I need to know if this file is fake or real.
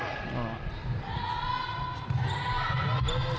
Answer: real